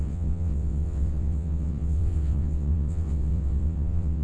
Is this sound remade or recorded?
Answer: remade